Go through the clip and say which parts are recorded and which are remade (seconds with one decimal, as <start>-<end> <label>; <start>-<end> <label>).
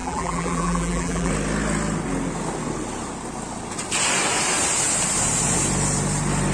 0.0-1.3 remade; 1.3-6.5 recorded